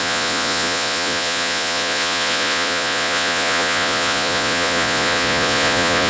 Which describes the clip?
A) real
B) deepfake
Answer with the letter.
B